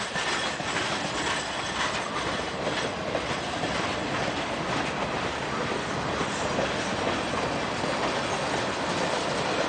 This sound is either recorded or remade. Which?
recorded